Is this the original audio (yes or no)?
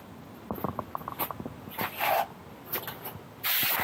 yes